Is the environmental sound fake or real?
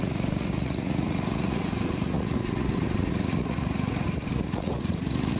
fake